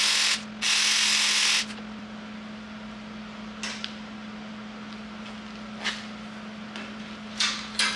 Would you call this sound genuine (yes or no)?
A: yes